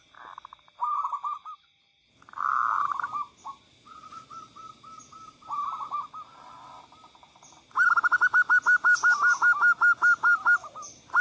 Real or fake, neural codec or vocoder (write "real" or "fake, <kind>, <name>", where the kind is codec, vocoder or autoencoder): real